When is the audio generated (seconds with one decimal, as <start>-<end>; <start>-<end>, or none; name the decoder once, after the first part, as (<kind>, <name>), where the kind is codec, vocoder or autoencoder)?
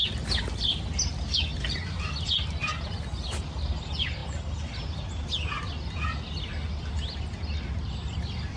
none